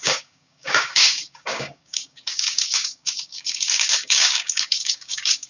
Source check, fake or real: fake